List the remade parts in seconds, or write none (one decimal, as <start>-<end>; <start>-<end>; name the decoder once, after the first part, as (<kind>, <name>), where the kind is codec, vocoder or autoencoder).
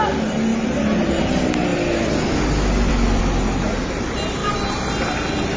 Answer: 0.5-1.2 (vocoder, BigVGAN v2)